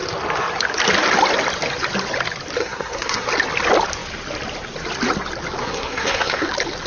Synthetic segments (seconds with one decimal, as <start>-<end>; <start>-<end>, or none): 2.6-3.3; 5.6-6.5